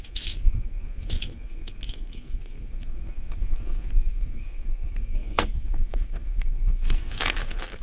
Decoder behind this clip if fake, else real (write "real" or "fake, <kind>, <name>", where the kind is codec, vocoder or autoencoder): fake, codec, SNAC